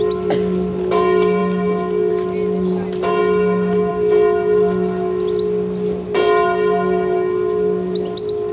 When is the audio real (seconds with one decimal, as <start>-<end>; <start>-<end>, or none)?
0.0-8.5